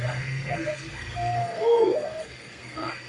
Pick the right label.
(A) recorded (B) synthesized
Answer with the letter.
B